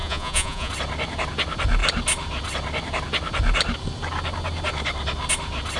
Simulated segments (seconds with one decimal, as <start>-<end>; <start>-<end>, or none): 0.0-0.7